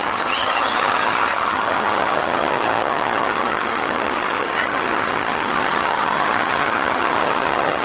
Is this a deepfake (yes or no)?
yes